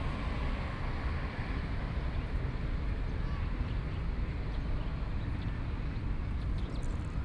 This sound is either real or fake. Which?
real